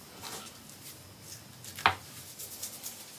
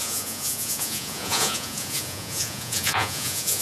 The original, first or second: first